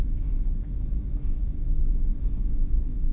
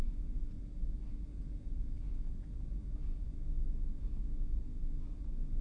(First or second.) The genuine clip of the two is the second